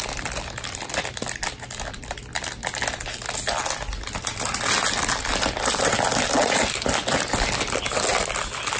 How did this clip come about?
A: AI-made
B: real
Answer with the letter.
B